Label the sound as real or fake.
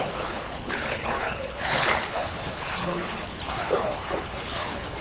fake